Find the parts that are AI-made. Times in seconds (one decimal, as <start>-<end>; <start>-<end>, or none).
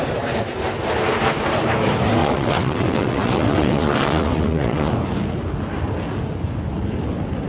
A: 2.2-4.9